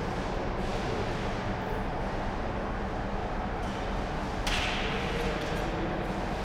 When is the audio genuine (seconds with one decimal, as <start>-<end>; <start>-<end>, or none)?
0.0-3.2; 3.7-6.4